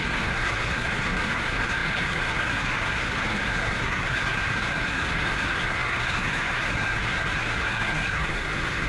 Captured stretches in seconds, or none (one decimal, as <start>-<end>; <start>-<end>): none